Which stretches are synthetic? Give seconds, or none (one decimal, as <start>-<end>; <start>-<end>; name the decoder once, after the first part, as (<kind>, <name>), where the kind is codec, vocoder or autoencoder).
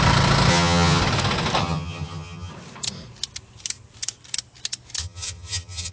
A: 0.5-1.0 (vocoder, HiFi-GAN); 1.6-2.5; 5.0-5.9